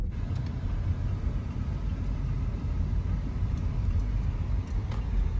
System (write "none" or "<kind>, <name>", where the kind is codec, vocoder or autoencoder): none